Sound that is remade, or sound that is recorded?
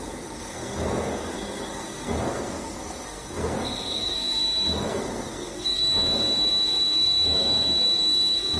remade